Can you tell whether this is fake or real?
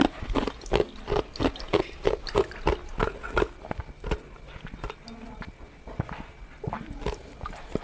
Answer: real